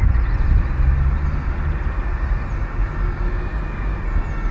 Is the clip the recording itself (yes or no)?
yes